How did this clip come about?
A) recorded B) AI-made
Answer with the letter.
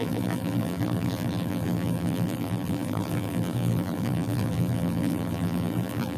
B